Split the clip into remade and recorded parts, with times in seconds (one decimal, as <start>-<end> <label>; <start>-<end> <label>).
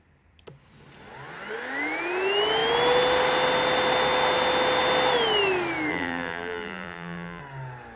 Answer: 0.0-5.9 recorded; 5.9-7.4 remade; 7.4-8.0 recorded